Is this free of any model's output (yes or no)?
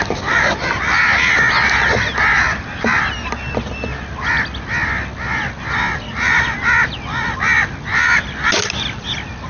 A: yes